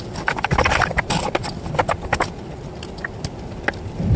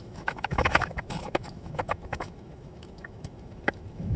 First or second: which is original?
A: first